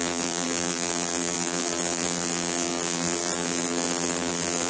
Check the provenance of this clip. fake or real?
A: fake